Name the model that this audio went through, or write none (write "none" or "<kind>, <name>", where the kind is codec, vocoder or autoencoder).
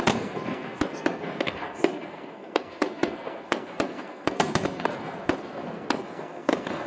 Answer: codec, SNAC